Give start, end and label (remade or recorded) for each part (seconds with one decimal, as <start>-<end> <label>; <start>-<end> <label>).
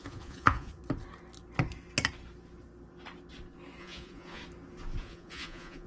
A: 0.0-0.8 remade; 0.8-3.8 recorded; 3.8-4.4 remade; 4.4-5.0 recorded; 5.0-5.9 remade